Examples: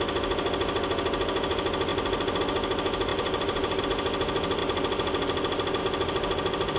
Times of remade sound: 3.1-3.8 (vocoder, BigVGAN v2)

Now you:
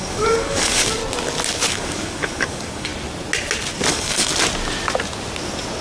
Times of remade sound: 0.0-1.0 (codec, DAC); 1.7-2.9; 3.9-4.3

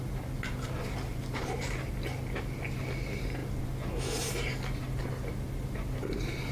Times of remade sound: 1.1-1.9 (vocoder, BigVGAN v2)

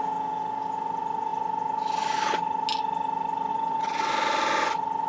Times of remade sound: 3.5-4.1 (vocoder, WaveNeXt)